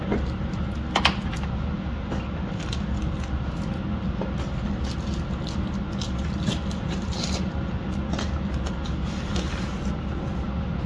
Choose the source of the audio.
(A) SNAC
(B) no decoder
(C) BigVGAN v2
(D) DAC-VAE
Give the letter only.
B